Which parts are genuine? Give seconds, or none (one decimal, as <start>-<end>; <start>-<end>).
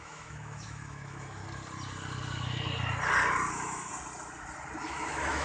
1.4-3.5; 3.9-4.8